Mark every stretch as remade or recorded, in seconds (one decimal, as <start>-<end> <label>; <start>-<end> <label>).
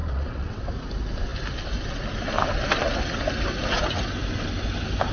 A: 0.0-0.7 remade; 0.7-5.1 recorded